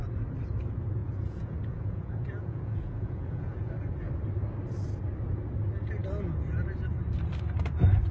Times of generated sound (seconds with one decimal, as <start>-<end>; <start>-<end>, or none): 1.0-3.7